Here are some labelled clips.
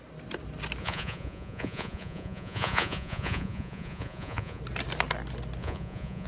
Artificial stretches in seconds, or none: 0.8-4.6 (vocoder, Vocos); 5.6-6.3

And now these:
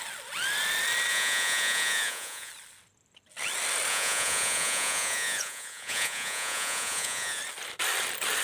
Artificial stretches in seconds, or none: 1.1-2.5 (vocoder, Vocos); 3.9-7.4

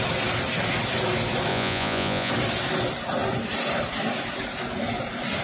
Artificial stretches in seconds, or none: 1.5-2.3 (vocoder, Vocos)

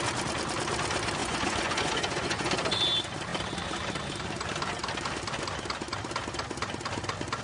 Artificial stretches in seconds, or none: 1.2-2.5 (vocoder, Vocos)

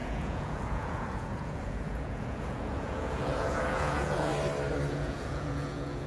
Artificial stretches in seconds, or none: 0.0-4.3 (vocoder, Vocos); 4.9-6.1

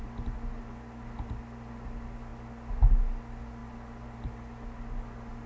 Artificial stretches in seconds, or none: none

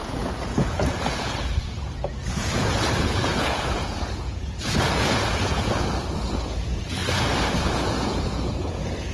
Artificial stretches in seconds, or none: 0.0-7.0 (vocoder, Vocos); 7.5-9.1